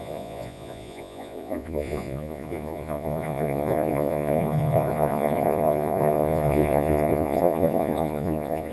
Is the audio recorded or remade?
remade